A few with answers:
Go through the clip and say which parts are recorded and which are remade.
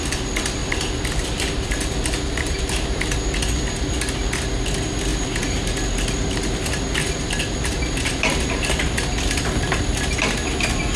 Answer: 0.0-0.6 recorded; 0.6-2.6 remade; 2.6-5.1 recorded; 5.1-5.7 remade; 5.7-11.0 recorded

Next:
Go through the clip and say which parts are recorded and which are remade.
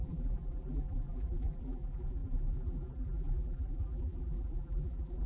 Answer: 0.0-5.3 remade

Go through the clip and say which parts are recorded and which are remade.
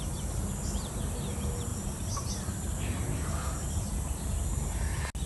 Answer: 0.0-1.7 recorded; 1.7-3.9 remade; 3.9-5.3 recorded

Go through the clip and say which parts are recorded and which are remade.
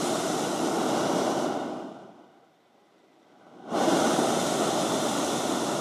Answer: 0.0-2.9 recorded; 2.9-4.4 remade; 4.4-5.8 recorded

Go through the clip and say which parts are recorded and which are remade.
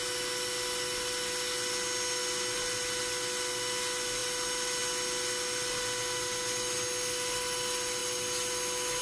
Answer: 0.0-9.0 recorded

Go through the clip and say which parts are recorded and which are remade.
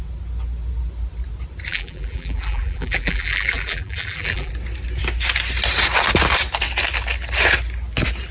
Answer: 0.0-1.7 recorded; 1.7-4.5 remade; 4.5-8.3 recorded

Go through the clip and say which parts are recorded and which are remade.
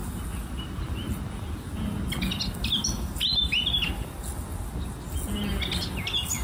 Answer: 0.0-6.4 recorded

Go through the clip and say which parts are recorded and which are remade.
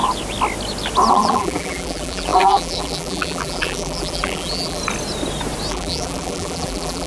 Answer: 0.0-1.1 recorded; 1.1-4.8 remade; 4.8-5.7 recorded; 5.7-7.1 remade